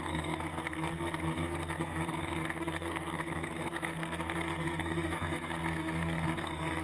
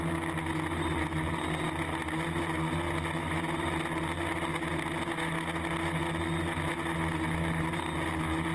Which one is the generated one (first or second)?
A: first